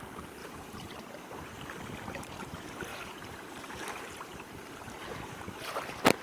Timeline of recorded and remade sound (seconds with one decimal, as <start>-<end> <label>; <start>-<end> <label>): 0.0-0.4 recorded; 0.4-1.0 remade; 1.0-2.9 recorded; 2.9-5.7 remade; 5.7-6.2 recorded